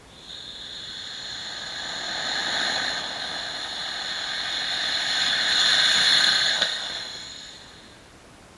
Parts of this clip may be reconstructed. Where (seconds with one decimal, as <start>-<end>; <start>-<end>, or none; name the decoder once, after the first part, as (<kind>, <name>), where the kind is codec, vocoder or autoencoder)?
6.0-7.5 (codec, SNAC)